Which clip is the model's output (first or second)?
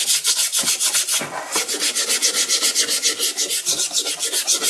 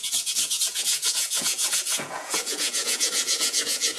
second